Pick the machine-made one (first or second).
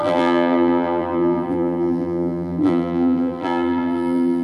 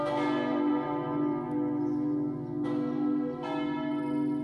first